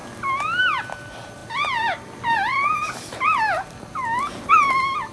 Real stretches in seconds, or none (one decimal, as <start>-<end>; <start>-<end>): 0.0-5.1